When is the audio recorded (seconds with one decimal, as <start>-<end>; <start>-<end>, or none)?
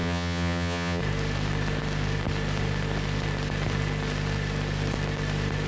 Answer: 1.0-5.7